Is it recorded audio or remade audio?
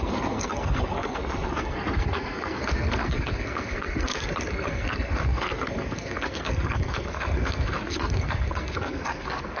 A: remade